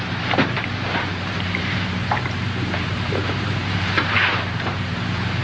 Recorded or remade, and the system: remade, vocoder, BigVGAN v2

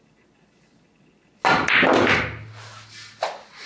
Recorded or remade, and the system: recorded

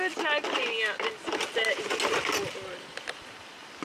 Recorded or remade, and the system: recorded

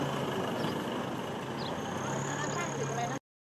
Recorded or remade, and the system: recorded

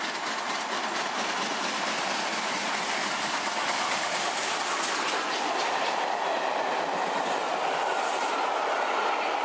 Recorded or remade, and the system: recorded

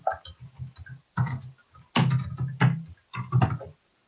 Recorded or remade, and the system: recorded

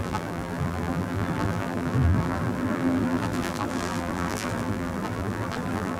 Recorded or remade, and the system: remade, vocoder, BigVGAN v2